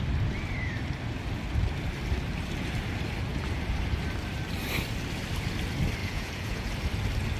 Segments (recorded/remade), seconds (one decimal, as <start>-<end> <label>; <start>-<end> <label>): 0.0-6.0 recorded; 6.0-6.7 remade; 6.7-7.4 recorded